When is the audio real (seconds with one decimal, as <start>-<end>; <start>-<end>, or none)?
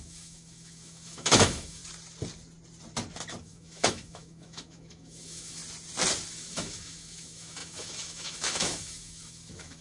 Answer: 1.8-3.4; 5.6-6.3